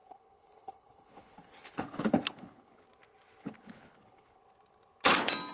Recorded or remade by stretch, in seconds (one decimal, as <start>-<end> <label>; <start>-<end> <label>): 0.0-2.8 remade; 2.8-3.4 recorded; 3.4-4.4 remade; 4.4-5.5 recorded